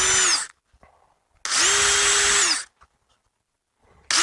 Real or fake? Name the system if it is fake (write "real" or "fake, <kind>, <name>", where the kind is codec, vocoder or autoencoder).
real